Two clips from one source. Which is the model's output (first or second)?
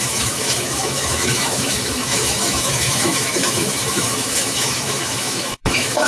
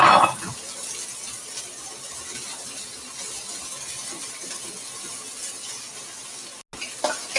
first